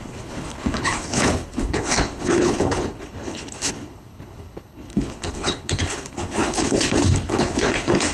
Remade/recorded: remade